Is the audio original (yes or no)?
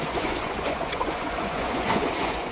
no